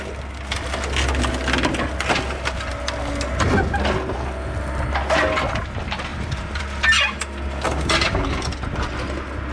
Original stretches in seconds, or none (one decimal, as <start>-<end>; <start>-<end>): 0.0-6.1; 6.6-9.5